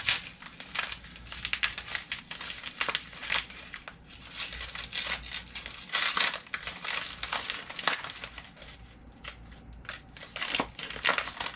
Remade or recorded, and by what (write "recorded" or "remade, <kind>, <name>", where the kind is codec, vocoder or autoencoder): recorded